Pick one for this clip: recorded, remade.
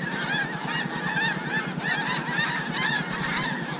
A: recorded